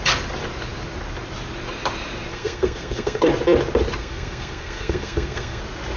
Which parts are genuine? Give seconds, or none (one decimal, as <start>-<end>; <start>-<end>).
0.0-2.3; 3.3-4.0; 5.6-6.0